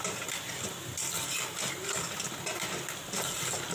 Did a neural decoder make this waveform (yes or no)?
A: no